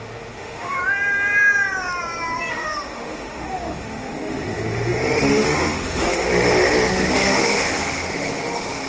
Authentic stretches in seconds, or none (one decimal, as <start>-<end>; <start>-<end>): 0.8-2.5; 6.3-6.9